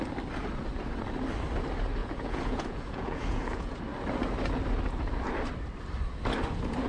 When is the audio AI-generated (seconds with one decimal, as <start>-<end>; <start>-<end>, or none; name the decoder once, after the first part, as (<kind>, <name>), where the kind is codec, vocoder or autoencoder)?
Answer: 2.0-3.8 (vocoder, Vocos)